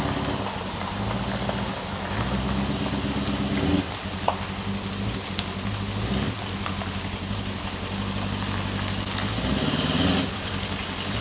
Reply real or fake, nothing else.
real